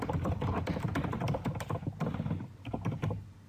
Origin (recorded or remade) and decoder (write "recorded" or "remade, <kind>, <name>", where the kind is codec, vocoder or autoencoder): recorded